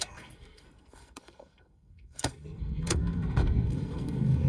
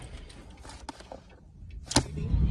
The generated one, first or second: first